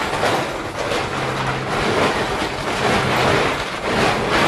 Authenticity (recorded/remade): recorded